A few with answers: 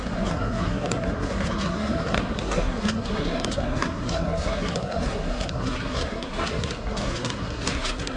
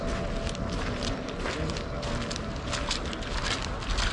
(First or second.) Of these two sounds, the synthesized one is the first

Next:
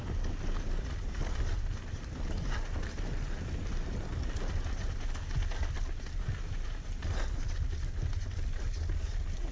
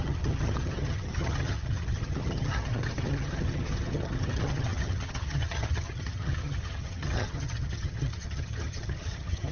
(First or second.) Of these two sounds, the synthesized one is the second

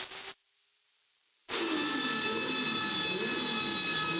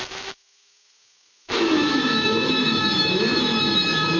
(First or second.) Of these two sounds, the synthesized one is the second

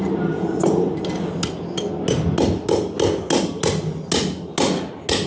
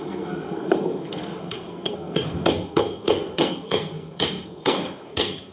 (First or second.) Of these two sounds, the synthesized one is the second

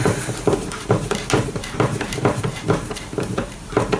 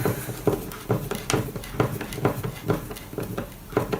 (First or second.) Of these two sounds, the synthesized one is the first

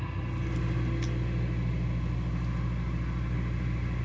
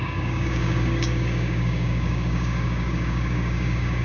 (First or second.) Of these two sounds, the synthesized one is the second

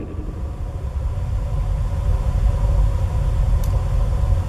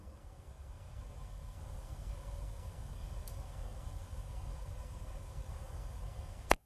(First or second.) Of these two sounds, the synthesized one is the second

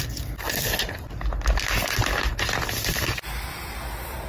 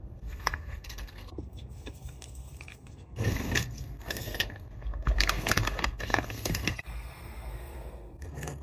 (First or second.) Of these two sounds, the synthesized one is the second